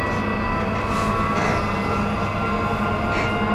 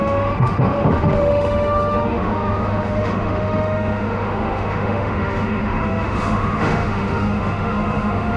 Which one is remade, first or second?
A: second